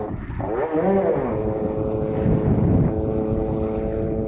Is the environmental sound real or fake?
real